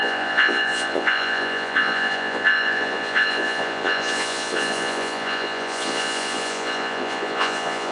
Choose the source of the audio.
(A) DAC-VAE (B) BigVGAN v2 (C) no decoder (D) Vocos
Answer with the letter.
D